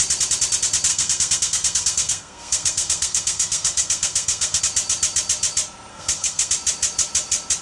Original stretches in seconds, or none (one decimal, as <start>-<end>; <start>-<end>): 0.0-0.9; 4.6-5.9; 6.5-7.6